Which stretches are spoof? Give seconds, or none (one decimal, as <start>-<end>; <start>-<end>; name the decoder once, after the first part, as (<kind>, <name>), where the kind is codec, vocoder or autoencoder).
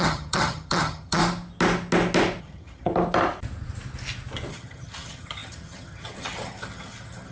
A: 0.0-1.2 (vocoder, HiFi-GAN); 2.4-2.9; 4.5-7.3